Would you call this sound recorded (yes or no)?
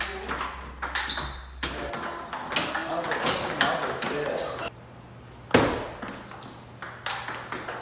yes